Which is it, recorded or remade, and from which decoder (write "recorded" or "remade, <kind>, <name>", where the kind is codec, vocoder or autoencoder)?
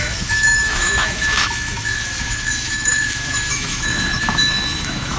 remade, autoencoder, DAC-VAE